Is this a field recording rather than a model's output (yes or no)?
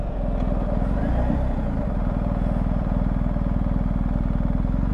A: yes